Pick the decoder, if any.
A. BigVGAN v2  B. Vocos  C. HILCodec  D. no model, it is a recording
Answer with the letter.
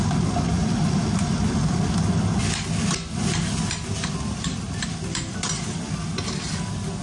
D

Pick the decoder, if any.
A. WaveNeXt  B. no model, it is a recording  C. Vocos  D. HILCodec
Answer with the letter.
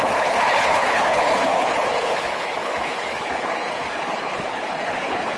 D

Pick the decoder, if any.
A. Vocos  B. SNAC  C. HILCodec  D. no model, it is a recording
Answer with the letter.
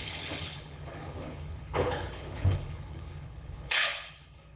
C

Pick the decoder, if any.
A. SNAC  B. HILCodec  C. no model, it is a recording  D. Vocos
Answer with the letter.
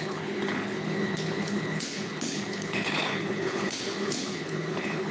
B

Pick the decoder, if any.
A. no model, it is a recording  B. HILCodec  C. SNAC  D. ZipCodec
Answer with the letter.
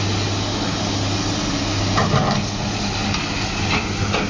A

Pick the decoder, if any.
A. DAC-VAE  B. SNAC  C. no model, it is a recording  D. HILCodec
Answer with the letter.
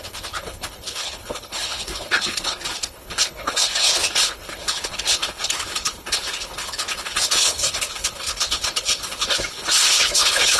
D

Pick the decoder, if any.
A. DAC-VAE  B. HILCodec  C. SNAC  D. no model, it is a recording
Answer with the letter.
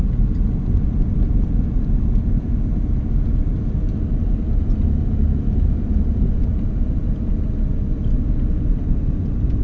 D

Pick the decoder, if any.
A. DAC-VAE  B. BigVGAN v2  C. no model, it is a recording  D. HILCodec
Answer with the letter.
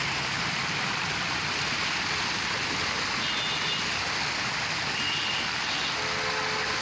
C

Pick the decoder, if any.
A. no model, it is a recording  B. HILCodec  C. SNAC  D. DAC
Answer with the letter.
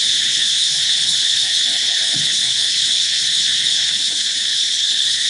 B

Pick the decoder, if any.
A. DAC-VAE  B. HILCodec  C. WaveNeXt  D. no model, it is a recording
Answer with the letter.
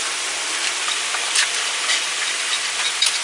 D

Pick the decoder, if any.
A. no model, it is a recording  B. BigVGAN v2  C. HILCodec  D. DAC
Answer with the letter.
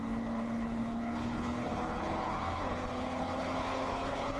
C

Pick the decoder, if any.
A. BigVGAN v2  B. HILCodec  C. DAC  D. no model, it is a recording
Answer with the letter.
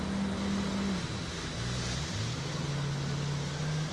D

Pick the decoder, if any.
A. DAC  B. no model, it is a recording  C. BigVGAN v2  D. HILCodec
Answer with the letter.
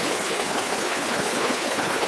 D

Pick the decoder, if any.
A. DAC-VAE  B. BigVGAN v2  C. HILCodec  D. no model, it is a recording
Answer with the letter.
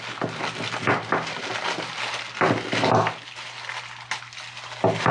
D